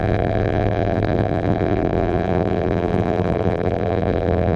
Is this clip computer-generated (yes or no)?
yes